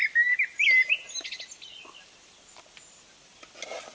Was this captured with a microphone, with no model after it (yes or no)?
yes